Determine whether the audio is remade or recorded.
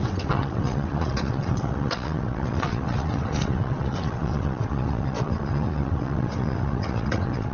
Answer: remade